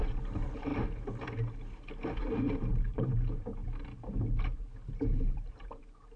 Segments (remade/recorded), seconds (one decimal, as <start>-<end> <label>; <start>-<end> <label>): 0.0-0.7 remade; 0.7-2.2 recorded; 2.2-3.6 remade; 3.6-4.4 recorded; 4.4-6.2 remade